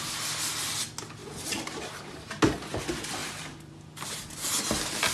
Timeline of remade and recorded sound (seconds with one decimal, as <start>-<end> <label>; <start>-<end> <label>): 0.0-1.2 recorded; 1.2-2.4 remade; 2.4-3.2 recorded; 3.2-4.6 remade; 4.6-5.1 recorded